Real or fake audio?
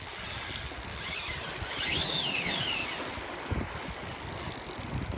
real